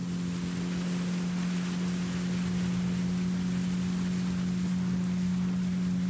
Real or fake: real